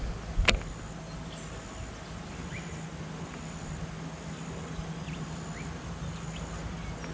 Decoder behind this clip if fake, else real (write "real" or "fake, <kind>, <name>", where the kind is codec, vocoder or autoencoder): real